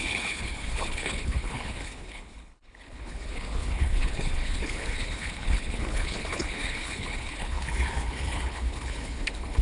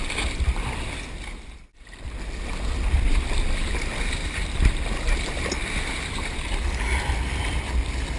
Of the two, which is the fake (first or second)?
first